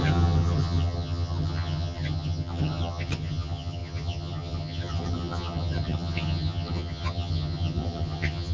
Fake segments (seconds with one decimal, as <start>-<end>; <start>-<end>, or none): 0.0-8.5